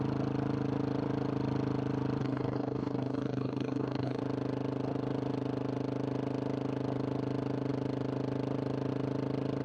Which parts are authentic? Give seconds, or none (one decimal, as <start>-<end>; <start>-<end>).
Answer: 0.0-2.2; 4.2-9.6